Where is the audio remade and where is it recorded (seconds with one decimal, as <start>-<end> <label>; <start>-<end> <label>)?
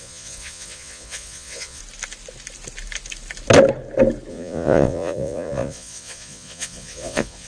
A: 0.0-1.8 remade; 1.8-4.3 recorded; 4.3-7.5 remade